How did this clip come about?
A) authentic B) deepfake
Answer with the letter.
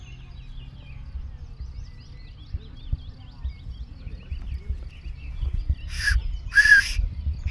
A